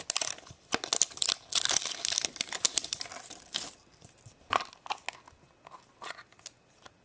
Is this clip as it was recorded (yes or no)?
yes